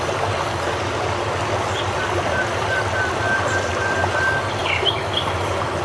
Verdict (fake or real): real